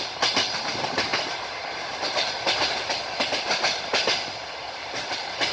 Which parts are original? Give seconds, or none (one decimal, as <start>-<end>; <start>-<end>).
0.0-5.5